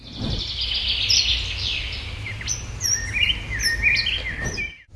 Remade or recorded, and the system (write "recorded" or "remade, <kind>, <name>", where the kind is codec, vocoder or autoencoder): recorded